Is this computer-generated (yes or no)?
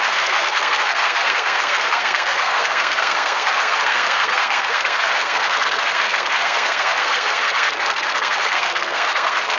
yes